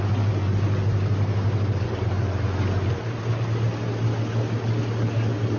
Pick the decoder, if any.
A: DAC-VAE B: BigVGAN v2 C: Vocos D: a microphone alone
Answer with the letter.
D